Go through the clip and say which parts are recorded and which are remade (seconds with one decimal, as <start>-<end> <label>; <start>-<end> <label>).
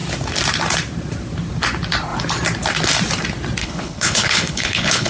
0.0-3.6 recorded; 3.6-5.1 remade